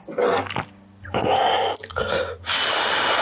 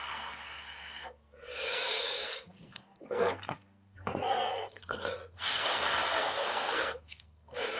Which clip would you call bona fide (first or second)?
first